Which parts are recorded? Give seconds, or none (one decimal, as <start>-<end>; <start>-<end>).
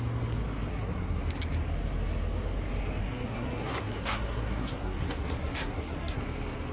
0.0-0.7; 1.2-3.0; 6.2-6.7